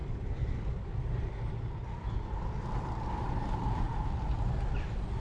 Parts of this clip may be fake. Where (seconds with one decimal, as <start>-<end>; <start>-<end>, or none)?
3.0-5.2